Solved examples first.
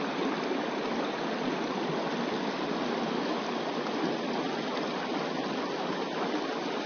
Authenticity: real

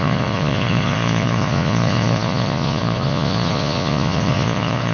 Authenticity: fake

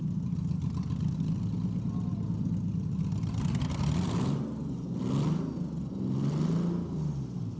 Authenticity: real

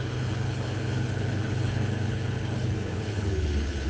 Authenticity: fake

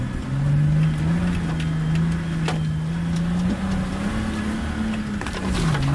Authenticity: real